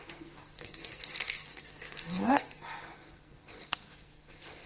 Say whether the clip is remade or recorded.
remade